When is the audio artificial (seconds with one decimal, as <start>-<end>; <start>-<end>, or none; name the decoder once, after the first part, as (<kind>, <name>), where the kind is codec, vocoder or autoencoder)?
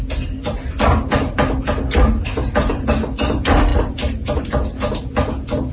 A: none